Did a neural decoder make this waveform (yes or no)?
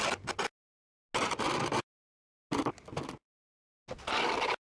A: no